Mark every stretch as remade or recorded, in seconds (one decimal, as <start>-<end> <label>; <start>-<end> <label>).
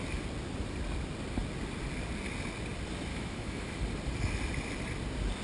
0.0-3.1 recorded; 3.1-3.8 remade; 3.8-5.4 recorded